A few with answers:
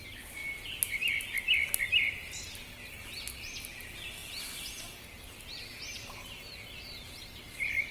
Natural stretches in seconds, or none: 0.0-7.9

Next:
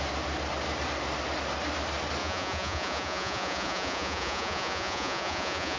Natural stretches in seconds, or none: 0.0-2.2